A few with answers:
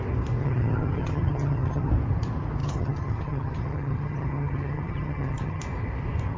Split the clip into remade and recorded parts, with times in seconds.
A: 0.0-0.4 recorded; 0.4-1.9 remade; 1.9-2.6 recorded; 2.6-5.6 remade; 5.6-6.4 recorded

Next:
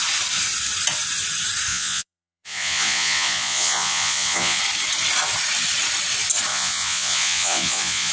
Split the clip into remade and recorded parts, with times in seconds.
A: 0.0-1.7 recorded; 1.7-4.6 remade; 4.6-6.5 recorded; 6.5-8.1 remade

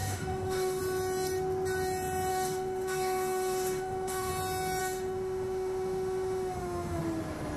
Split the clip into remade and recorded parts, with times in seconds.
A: 0.0-0.8 remade; 0.8-2.3 recorded; 2.3-4.3 remade; 4.3-4.8 recorded; 4.8-7.0 remade; 7.0-7.6 recorded